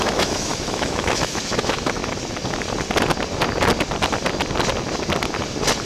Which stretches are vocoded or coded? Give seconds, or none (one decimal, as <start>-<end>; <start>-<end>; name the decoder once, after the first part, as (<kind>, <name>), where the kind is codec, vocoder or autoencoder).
0.0-2.0 (autoencoder, DAC-VAE)